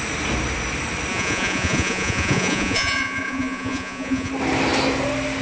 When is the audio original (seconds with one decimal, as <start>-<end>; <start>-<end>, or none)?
0.0-1.1; 4.3-5.4